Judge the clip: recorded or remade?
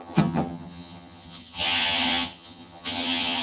remade